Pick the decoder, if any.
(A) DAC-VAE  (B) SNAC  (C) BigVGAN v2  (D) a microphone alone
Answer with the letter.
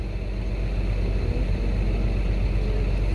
D